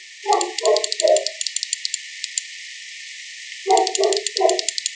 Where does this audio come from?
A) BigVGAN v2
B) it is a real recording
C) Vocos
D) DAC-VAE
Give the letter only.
B